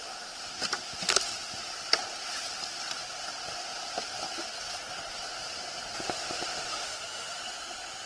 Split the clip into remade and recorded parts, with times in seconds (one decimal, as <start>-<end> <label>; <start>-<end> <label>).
0.0-6.7 recorded; 6.7-7.4 remade; 7.4-8.1 recorded